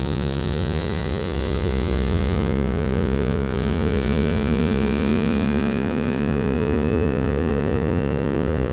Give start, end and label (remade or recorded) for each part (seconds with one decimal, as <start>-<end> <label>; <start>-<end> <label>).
0.0-8.7 remade